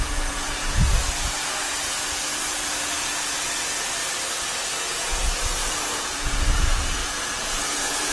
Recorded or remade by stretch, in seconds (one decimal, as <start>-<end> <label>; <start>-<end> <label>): 0.0-4.0 remade; 4.0-4.9 recorded; 4.9-8.1 remade